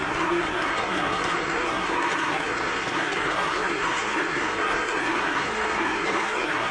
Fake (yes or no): yes